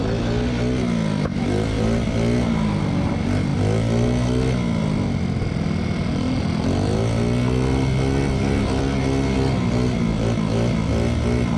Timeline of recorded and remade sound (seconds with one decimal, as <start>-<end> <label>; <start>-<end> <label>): 0.0-11.6 recorded